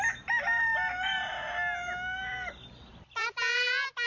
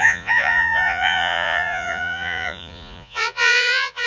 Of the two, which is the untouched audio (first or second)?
first